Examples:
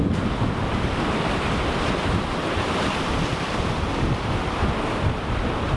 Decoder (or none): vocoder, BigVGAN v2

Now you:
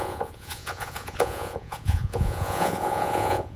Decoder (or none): vocoder, Vocos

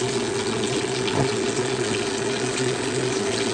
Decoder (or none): vocoder, Vocos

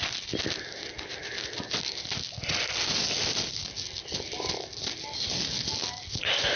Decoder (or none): none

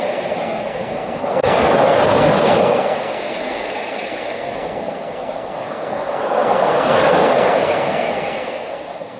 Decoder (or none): codec, SNAC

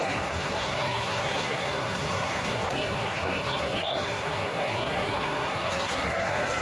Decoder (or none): codec, SNAC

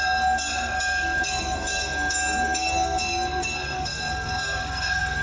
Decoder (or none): codec, SNAC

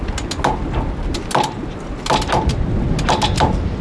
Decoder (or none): none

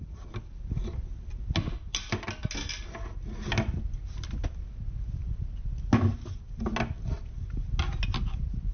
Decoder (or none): none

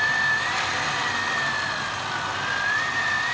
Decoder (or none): none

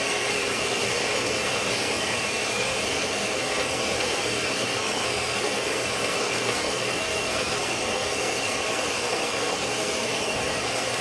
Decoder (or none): codec, SNAC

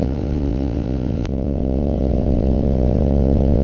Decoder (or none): vocoder, WaveNeXt